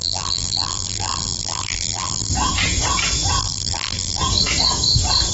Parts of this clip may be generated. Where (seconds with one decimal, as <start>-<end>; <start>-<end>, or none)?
0.0-2.3; 3.4-4.2